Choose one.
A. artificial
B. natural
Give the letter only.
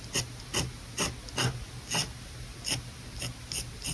B